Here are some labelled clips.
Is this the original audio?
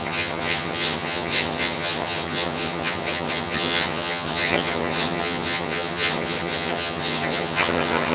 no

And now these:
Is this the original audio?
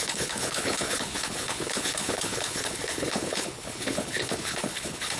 no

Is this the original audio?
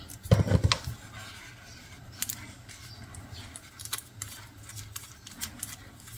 yes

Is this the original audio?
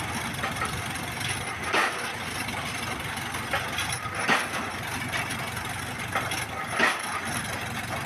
yes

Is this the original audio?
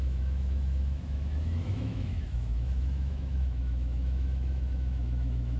no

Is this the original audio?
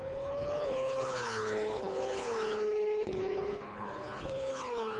no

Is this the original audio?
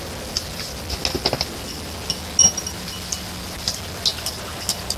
yes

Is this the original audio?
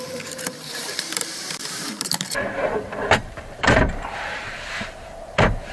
no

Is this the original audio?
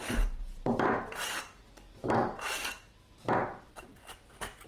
yes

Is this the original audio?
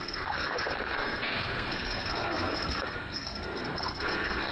no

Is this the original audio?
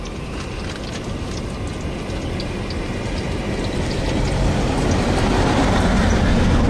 yes